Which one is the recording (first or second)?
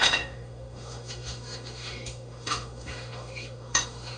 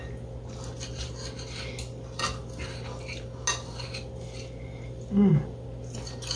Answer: second